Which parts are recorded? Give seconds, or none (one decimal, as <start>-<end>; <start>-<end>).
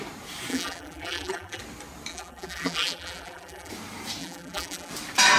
0.0-0.5; 1.6-2.1; 3.7-4.2; 4.9-5.4